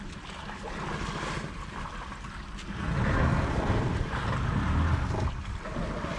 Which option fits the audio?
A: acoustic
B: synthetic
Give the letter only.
A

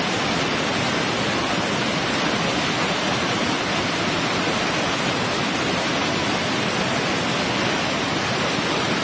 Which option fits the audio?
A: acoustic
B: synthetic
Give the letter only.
A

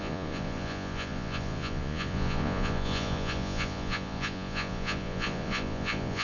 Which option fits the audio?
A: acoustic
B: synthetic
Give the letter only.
B